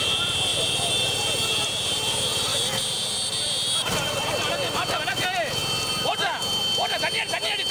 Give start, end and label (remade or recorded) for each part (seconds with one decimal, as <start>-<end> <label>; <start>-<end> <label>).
0.0-7.7 recorded